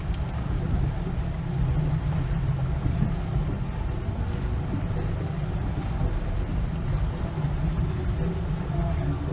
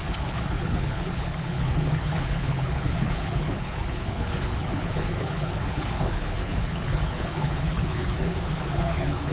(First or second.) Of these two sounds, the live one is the first